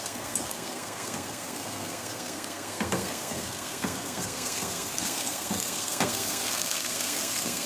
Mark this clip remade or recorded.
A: remade